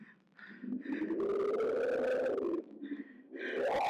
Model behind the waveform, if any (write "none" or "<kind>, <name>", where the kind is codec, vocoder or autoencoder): none